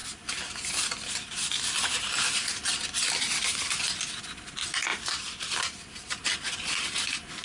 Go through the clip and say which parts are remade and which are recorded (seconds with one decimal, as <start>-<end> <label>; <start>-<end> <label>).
0.0-7.4 recorded